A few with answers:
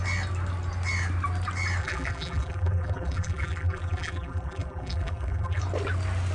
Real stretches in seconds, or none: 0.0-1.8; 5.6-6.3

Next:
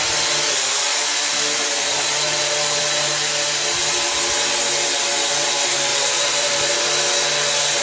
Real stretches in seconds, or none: 0.0-0.9; 4.2-5.9; 7.0-7.8

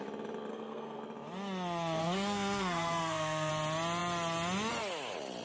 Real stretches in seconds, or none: 0.0-0.5; 1.0-2.0; 3.5-5.4

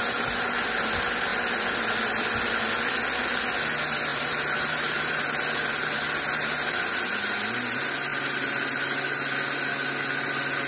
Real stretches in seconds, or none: 0.0-4.1; 5.2-10.7

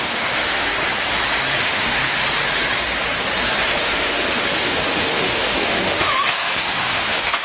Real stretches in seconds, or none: 0.7-1.6; 2.2-3.8

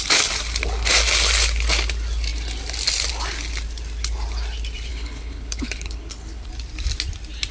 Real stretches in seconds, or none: 0.0-4.9; 6.5-7.5

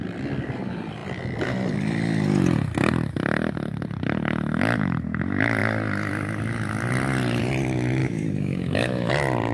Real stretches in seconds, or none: 0.0-8.0; 9.1-9.5

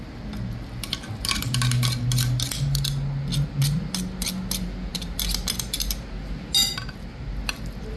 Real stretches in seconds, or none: 0.0-8.0